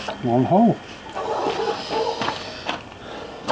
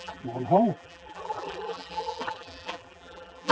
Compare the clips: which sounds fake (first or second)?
second